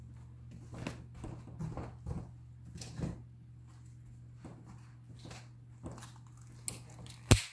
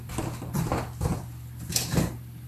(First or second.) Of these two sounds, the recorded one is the first